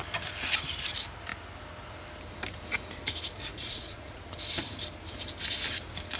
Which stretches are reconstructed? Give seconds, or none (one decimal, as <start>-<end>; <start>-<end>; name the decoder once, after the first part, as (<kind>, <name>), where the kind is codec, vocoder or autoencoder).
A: 3.5-4.2 (vocoder, Vocos)